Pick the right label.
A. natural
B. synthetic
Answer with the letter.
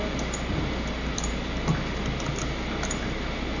A